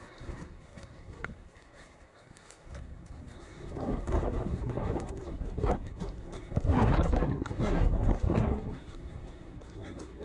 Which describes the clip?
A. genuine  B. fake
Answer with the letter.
B